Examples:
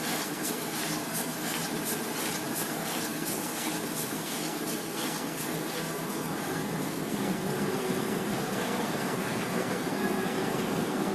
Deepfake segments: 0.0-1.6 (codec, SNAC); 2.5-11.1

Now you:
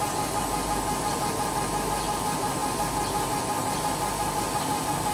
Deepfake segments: none

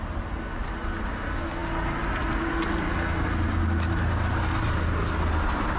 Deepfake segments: none

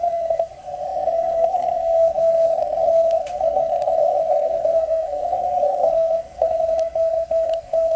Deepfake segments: 0.0-8.0 (codec, SNAC)

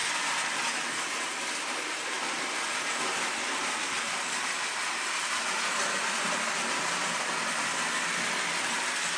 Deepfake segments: none

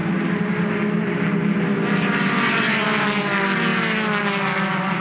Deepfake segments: none